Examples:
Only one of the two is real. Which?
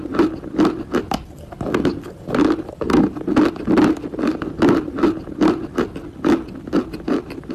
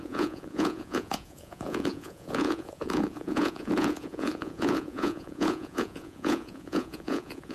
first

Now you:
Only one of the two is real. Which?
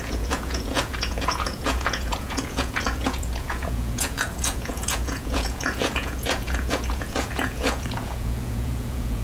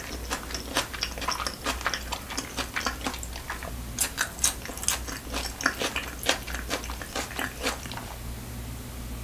second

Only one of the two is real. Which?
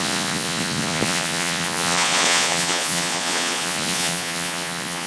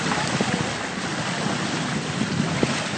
second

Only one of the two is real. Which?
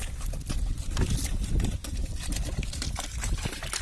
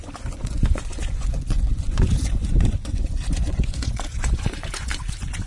first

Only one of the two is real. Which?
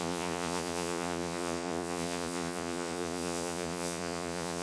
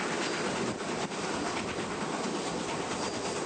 second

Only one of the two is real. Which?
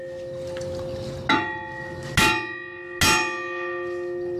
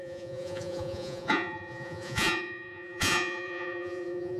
first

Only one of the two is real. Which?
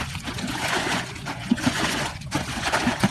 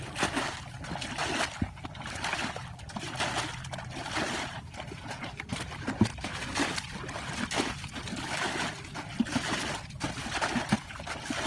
second